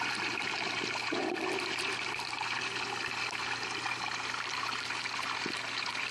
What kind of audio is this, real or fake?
real